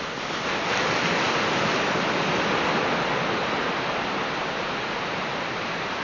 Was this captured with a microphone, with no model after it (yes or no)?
yes